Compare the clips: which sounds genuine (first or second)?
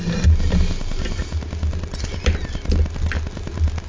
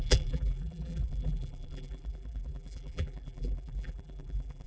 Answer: first